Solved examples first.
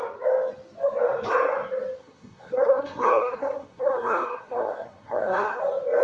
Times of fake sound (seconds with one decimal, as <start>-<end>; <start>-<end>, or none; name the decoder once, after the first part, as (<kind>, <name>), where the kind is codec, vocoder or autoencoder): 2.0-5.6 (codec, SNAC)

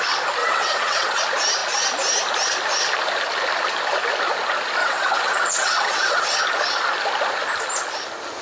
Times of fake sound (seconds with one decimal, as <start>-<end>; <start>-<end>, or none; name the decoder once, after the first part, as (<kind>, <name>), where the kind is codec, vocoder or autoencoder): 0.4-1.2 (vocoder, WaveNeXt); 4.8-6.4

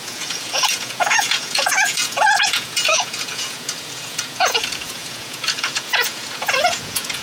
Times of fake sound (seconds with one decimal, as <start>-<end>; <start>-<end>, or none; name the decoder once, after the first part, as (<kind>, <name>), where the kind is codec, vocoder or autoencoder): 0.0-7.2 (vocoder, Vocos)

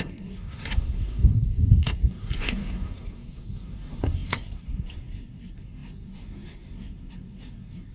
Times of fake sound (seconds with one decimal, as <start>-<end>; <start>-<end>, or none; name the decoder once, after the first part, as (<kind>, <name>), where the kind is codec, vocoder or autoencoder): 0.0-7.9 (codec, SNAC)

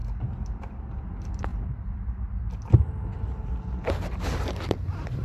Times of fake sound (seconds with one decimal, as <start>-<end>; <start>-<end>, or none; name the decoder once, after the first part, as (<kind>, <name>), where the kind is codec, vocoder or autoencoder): 0.0-1.5 (vocoder, BigVGAN v2); 2.7-5.2